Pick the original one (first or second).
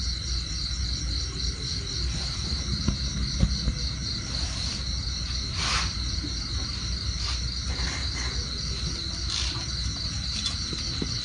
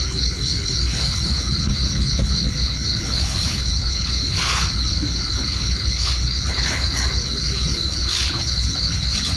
first